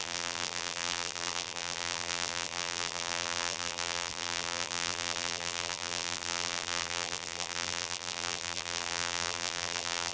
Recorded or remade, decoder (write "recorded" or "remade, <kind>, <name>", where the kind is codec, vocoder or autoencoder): remade, vocoder, BigVGAN v2